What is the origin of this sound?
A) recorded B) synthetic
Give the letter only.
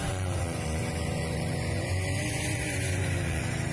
B